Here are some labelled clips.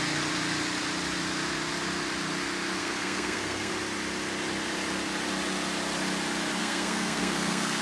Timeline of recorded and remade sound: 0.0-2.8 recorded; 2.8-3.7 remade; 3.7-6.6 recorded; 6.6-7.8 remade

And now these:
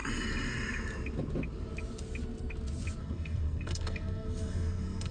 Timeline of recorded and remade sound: 0.0-3.0 recorded; 3.0-5.1 remade

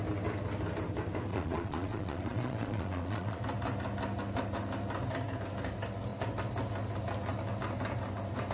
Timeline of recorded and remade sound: 0.0-1.3 recorded; 1.3-3.4 remade; 3.4-8.5 recorded